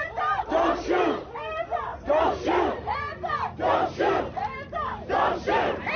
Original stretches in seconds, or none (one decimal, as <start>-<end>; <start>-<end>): 0.0-6.0